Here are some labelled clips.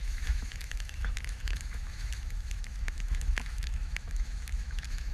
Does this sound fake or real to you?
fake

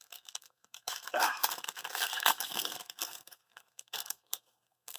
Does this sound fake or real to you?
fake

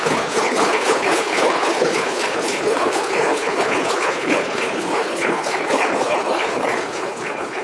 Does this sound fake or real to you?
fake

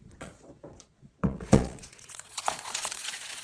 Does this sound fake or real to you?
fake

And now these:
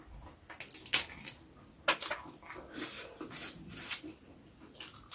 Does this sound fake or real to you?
real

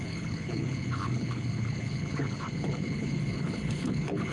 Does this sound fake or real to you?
fake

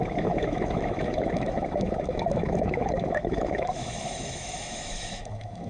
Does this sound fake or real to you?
fake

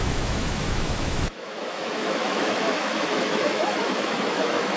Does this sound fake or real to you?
fake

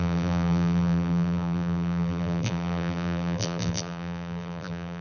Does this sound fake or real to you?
fake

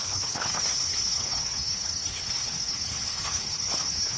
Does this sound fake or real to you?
fake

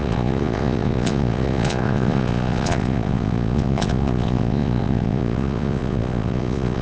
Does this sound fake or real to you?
fake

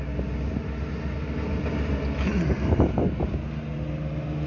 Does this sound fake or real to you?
real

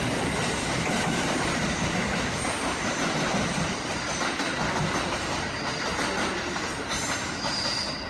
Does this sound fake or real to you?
real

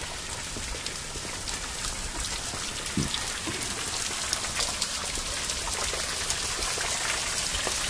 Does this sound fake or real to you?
real